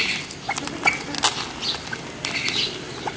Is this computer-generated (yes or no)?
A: no